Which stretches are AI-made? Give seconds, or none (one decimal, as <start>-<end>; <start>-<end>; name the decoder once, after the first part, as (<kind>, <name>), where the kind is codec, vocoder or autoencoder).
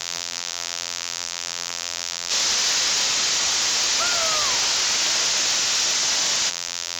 0.0-2.3 (vocoder, BigVGAN v2); 6.5-7.0